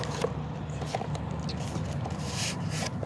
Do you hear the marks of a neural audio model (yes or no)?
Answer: no